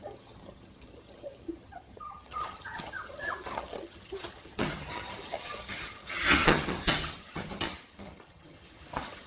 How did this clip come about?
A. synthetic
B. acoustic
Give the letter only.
A